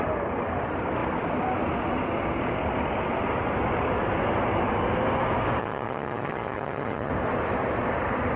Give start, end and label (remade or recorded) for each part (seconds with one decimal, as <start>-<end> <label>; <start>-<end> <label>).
0.0-5.6 recorded; 5.6-7.1 remade; 7.1-8.4 recorded